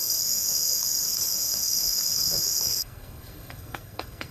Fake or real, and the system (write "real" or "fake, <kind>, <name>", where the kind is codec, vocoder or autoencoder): fake, codec, SNAC